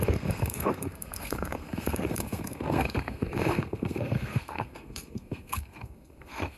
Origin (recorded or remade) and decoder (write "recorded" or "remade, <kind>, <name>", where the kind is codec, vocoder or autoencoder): remade, codec, SNAC